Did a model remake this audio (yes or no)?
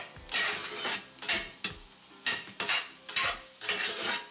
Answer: no